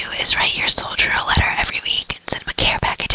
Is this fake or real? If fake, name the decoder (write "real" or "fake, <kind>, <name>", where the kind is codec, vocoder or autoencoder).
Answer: real